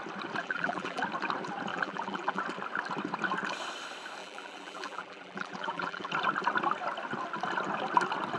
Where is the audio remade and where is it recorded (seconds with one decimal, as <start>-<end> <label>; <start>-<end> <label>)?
0.0-0.4 recorded; 0.4-1.0 remade; 1.0-1.7 recorded; 1.7-2.4 remade; 2.4-4.2 recorded; 4.2-6.1 remade; 6.1-8.4 recorded